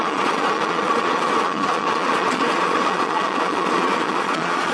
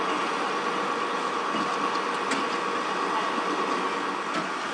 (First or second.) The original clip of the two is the second